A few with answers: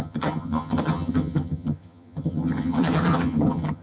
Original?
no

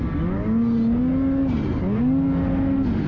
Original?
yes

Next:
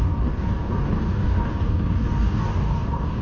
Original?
no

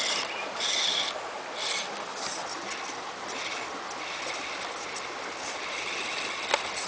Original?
yes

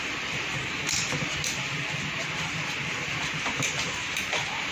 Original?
yes